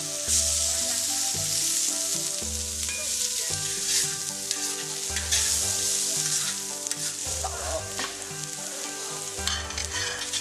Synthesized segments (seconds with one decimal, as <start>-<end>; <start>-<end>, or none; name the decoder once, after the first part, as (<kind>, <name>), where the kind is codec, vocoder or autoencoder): 3.0-4.2 (vocoder, BigVGAN v2); 7.2-7.8; 9.8-10.4